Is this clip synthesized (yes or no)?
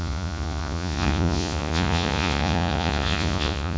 yes